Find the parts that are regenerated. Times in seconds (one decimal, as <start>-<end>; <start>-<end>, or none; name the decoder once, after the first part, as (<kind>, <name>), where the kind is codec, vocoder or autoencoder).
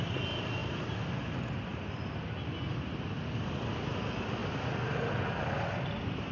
none